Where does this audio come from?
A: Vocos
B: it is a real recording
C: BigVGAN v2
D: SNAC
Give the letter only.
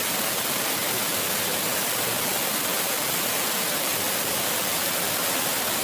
C